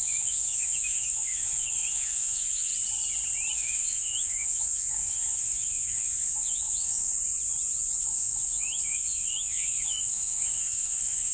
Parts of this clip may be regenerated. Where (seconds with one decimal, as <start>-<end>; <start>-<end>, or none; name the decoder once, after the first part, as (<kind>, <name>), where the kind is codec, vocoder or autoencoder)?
0.0-2.7 (autoencoder, DAC-VAE); 3.5-7.1; 8.0-11.3